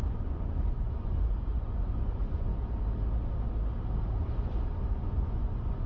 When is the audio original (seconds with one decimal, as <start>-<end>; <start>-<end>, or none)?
2.5-4.2